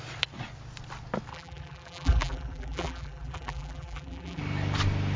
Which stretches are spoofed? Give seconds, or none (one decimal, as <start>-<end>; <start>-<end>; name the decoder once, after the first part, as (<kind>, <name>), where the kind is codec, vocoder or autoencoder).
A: 1.3-4.4 (vocoder, BigVGAN v2)